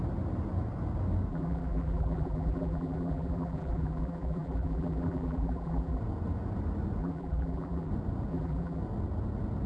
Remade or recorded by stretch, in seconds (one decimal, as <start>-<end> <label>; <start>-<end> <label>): 0.0-1.3 recorded; 1.3-6.0 remade; 6.0-7.0 recorded; 7.0-7.9 remade; 7.9-8.3 recorded; 8.3-8.8 remade; 8.8-9.7 recorded